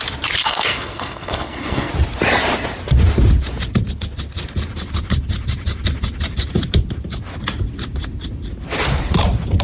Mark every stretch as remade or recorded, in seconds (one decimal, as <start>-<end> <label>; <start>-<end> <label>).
0.0-0.4 recorded; 0.4-1.9 remade; 1.9-9.6 recorded